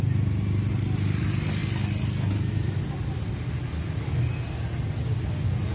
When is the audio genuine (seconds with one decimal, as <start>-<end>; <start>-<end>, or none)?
0.0-5.7